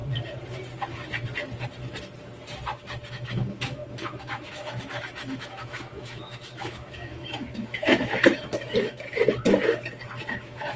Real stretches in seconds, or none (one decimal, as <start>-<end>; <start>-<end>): 0.0-3.1; 9.2-10.3